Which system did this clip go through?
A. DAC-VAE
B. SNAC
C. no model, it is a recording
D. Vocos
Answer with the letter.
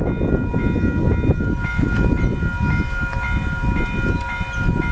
C